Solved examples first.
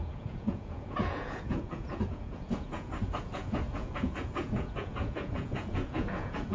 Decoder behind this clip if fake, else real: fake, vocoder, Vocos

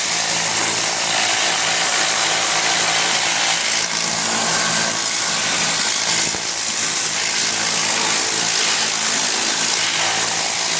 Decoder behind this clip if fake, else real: real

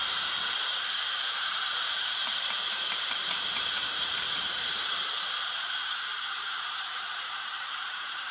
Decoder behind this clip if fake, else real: fake, vocoder, BigVGAN v2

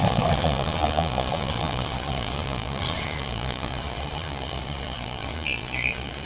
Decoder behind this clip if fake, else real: fake, vocoder, Vocos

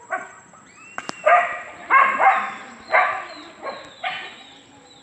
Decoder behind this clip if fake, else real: real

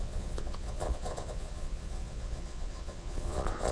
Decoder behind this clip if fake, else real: fake, vocoder, Vocos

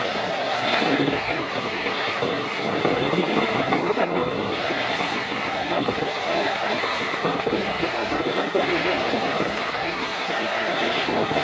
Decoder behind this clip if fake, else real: fake, codec, SNAC